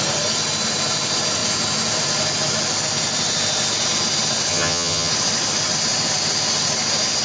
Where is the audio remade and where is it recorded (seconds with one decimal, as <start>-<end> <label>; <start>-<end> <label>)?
0.0-4.5 recorded; 4.5-5.1 remade; 5.1-7.2 recorded

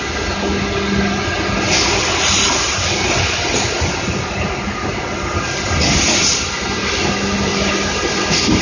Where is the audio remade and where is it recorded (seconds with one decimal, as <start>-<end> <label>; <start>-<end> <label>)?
0.0-8.6 recorded

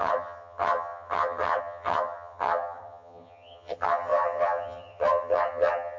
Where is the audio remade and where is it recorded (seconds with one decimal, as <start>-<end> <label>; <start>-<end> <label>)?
0.0-6.0 remade

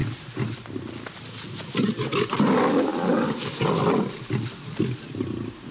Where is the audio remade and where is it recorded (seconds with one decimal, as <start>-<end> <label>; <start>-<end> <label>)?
0.0-5.7 recorded

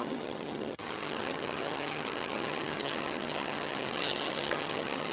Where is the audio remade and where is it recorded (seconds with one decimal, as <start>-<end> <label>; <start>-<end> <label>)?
0.0-5.1 remade

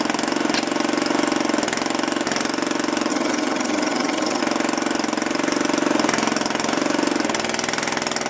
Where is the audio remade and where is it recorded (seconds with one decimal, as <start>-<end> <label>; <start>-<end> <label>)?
0.0-3.1 recorded; 3.1-4.4 remade; 4.4-8.3 recorded

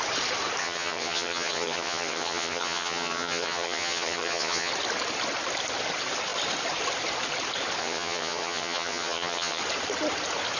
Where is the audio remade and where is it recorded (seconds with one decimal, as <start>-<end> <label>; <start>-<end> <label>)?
0.0-0.6 recorded; 0.6-4.7 remade; 4.7-7.8 recorded; 7.8-9.6 remade; 9.6-10.6 recorded

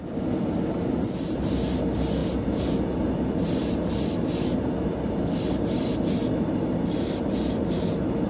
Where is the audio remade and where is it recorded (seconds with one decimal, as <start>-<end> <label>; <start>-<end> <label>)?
0.0-8.3 recorded